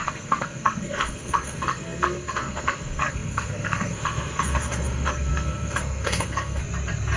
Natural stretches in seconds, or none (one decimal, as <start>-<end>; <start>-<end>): 6.6-7.2